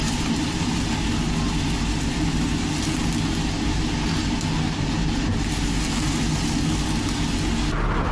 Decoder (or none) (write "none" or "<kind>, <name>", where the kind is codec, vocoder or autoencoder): none